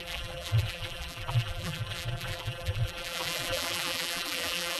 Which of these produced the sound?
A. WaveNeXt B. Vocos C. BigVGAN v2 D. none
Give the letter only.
C